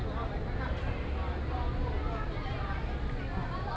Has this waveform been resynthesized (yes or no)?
no